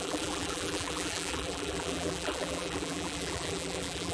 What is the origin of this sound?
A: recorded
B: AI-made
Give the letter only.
B